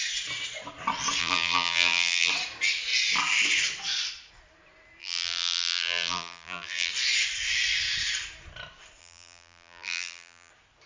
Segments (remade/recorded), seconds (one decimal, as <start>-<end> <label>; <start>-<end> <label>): 0.0-1.2 recorded; 1.2-2.3 remade; 2.3-5.0 recorded; 5.0-6.9 remade; 6.9-9.0 recorded; 9.0-10.5 remade; 10.5-10.9 recorded